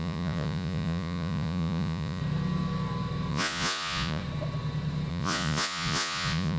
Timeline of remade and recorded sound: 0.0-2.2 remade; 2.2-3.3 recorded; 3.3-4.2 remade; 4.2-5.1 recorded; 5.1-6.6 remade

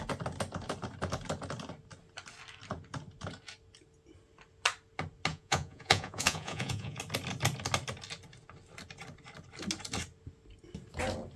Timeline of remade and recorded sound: 0.0-5.3 recorded; 5.3-7.0 remade; 7.0-11.4 recorded

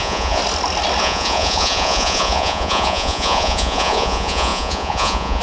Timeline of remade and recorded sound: 0.0-0.4 remade; 0.4-1.0 recorded; 1.0-5.4 remade

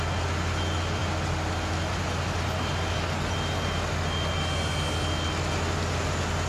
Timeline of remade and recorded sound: 0.0-6.5 recorded